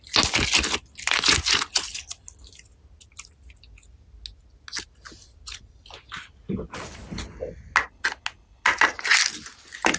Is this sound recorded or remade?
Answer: recorded